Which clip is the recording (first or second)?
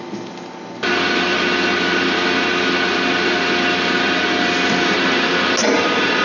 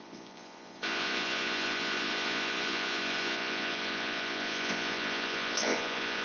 first